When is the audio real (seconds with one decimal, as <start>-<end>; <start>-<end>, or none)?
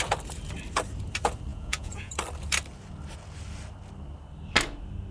0.0-1.5; 2.1-5.1